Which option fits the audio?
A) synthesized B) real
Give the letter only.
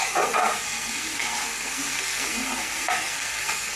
A